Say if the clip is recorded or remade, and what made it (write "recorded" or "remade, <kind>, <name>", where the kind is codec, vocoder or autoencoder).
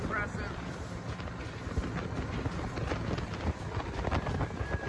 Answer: recorded